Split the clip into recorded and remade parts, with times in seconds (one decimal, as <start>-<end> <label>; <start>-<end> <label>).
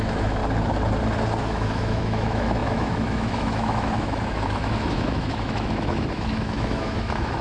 0.0-0.4 remade; 0.4-1.4 recorded; 1.4-7.4 remade